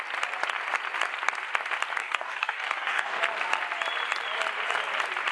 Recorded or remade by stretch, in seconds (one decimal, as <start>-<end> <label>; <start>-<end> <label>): 0.0-2.0 recorded; 2.0-3.2 remade; 3.2-5.3 recorded